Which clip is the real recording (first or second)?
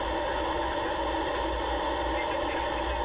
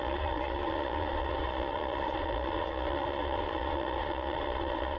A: first